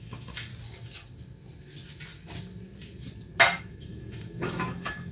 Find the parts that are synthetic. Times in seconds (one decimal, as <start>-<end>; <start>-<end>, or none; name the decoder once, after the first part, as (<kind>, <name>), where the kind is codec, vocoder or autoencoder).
0.0-0.5 (autoencoder, DAC-VAE); 3.6-5.1